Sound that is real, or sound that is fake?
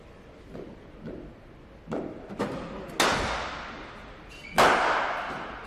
real